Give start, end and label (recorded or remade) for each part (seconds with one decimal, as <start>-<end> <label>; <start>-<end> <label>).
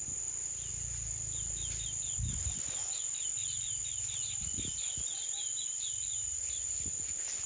0.0-7.5 recorded